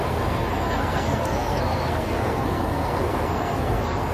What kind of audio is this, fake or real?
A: fake